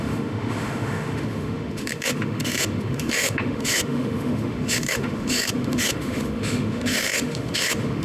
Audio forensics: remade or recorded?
remade